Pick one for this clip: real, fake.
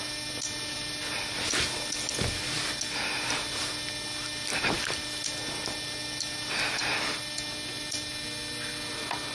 real